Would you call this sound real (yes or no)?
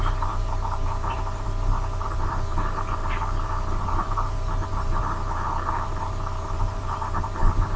no